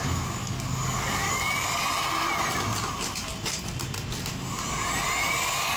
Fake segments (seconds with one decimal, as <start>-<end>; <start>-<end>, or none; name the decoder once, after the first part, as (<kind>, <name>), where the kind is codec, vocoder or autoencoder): 0.0-1.8 (codec, DAC); 5.3-5.8